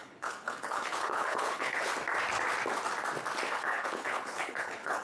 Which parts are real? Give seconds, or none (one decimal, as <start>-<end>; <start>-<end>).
1.9-3.5